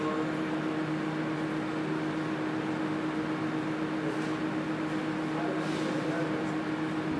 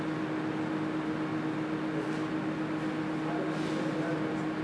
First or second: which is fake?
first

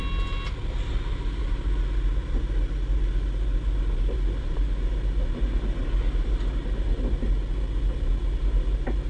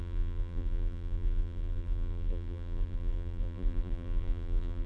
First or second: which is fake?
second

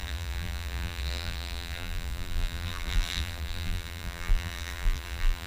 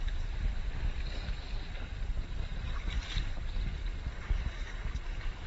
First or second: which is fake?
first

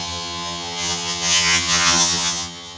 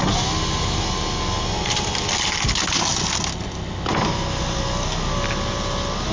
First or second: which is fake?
first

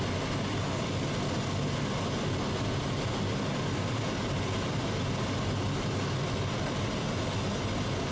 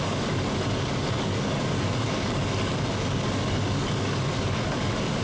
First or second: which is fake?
second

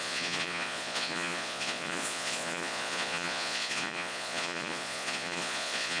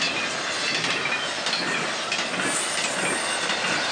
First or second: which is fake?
first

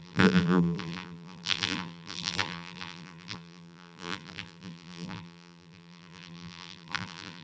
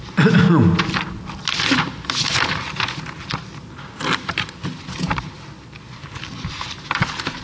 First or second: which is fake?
first